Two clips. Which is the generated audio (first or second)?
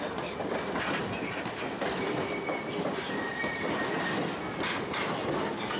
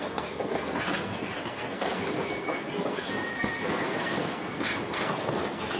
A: second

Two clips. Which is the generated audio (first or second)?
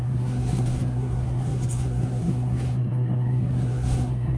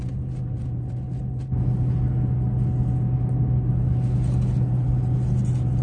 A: first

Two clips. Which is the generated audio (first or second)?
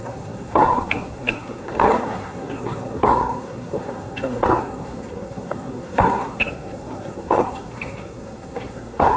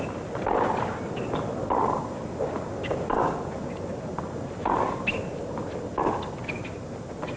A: first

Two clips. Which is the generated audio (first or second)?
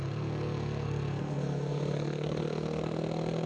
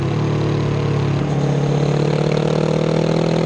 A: first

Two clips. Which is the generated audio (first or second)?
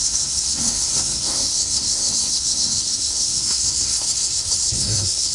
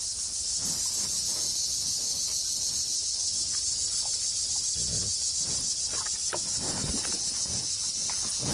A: first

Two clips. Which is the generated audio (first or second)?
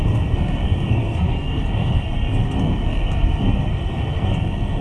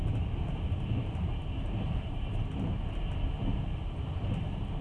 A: first